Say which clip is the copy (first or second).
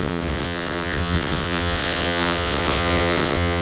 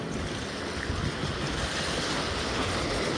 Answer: first